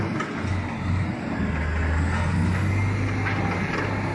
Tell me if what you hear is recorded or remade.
recorded